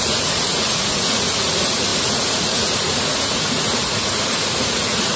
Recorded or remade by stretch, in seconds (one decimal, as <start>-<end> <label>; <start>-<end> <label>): 0.0-5.2 remade